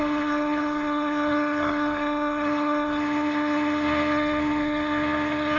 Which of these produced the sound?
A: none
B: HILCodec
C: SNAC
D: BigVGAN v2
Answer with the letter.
C